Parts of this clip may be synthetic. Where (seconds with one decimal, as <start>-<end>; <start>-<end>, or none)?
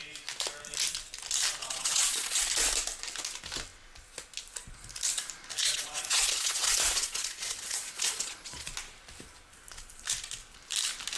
1.6-2.4; 5.6-8.7